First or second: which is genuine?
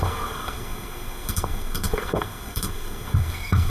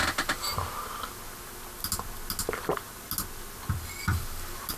second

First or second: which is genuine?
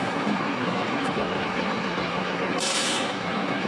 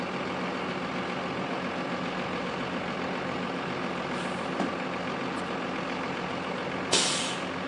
second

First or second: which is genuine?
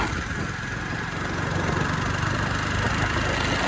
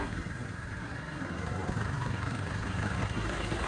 first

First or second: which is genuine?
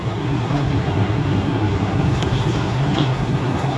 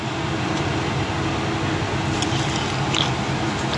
second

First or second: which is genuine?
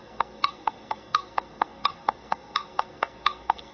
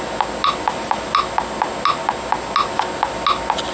second